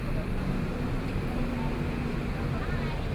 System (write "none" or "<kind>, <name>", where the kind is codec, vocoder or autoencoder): none